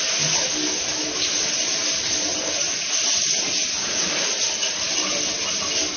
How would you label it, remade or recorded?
recorded